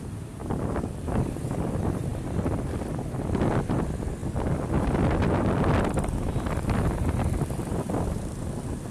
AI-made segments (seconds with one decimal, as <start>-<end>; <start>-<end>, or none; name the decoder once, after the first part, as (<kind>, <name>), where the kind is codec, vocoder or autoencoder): 0.0-2.1 (vocoder, BigVGAN v2); 3.2-8.9